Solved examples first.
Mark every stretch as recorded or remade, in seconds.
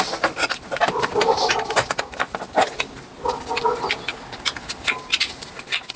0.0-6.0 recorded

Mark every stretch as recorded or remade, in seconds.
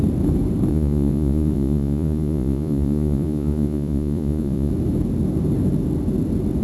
0.0-0.7 recorded; 0.7-4.7 remade; 4.7-6.6 recorded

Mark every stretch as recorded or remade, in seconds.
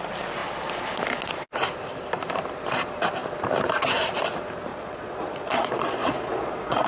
0.0-4.7 recorded; 4.7-6.9 remade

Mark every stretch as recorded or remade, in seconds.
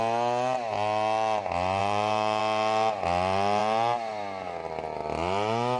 0.0-1.8 recorded; 1.8-2.4 remade; 2.4-5.8 recorded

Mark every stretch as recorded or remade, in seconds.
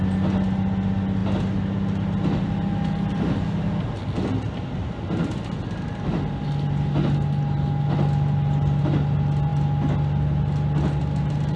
0.0-11.6 recorded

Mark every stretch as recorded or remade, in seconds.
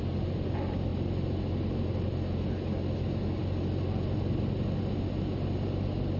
0.0-6.2 recorded